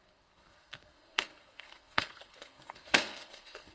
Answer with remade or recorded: remade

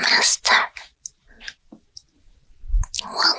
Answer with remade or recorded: recorded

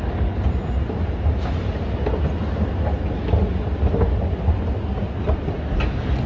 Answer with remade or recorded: recorded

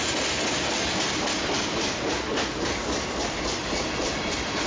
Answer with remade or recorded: recorded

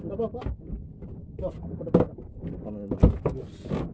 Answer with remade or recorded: recorded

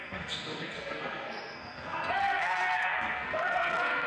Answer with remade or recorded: remade